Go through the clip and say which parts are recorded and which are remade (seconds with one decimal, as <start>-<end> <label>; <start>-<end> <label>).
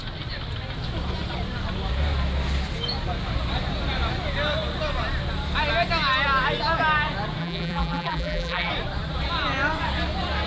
0.0-7.4 recorded; 7.4-8.7 remade; 8.7-10.5 recorded